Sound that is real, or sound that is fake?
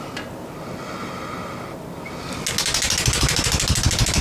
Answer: real